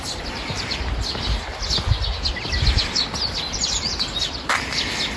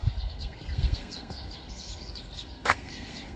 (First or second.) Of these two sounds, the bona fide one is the first